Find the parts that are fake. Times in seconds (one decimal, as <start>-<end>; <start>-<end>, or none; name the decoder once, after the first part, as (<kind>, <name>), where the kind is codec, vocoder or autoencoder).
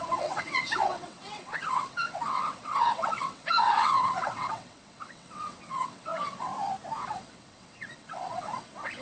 0.0-6.5 (vocoder, WaveNeXt); 7.0-9.0